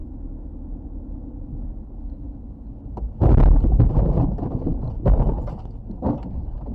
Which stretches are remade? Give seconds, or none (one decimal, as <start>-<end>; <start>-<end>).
4.0-6.7